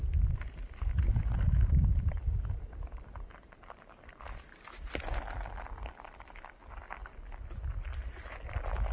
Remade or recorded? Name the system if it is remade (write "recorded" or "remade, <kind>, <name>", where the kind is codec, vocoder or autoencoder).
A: recorded